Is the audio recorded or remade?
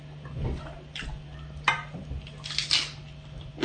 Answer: recorded